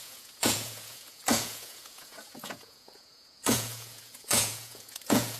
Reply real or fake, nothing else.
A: fake